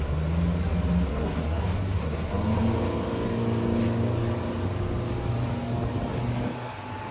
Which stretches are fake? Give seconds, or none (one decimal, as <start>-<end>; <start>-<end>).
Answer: 1.1-2.3